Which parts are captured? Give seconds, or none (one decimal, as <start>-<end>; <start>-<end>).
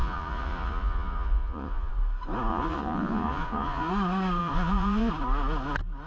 1.9-2.5; 3.9-4.4; 5.1-6.1